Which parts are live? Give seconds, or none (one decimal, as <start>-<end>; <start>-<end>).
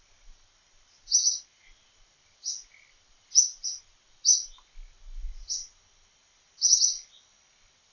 0.0-7.9